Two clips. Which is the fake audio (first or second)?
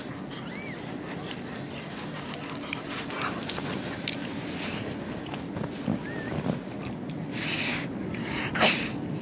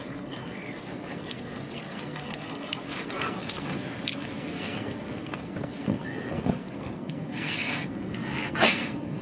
second